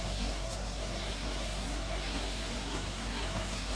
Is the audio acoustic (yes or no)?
no